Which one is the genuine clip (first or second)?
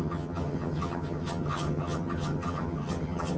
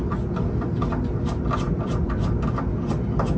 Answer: second